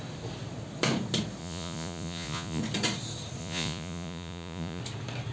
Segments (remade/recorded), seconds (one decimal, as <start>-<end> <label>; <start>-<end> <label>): 0.0-1.4 recorded; 1.4-2.6 remade; 2.6-3.4 recorded; 3.4-4.8 remade; 4.8-5.3 recorded